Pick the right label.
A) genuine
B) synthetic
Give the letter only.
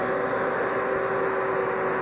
A